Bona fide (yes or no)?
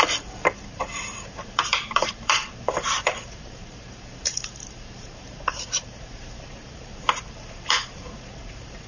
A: no